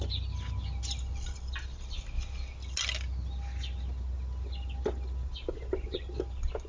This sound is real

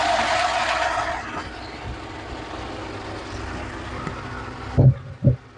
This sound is real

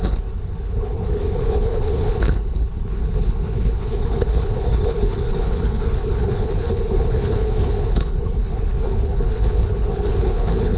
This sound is fake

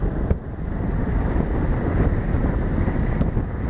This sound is real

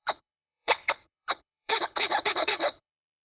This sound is fake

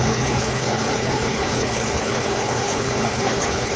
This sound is fake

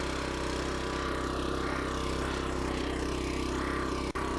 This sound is real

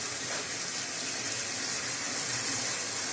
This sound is real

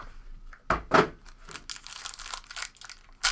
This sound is real